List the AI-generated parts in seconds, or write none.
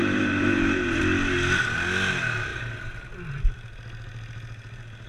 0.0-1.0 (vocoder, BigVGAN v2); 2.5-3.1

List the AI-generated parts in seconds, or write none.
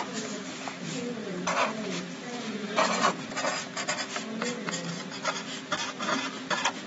none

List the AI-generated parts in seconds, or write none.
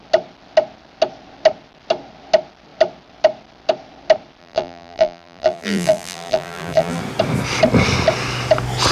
4.4-7.0 (vocoder, BigVGAN v2)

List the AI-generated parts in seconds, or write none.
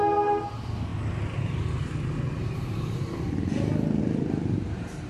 0.0-0.9 (vocoder, BigVGAN v2); 4.0-5.1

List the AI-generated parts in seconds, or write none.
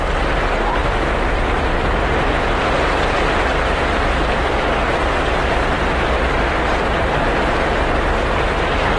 0.0-0.8 (vocoder, BigVGAN v2); 1.3-9.0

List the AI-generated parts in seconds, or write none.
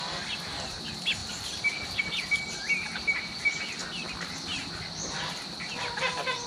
1.2-2.0 (vocoder, BigVGAN v2)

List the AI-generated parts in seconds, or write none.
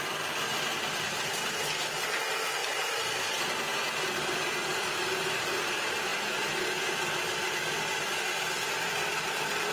2.6-3.4 (vocoder, BigVGAN v2)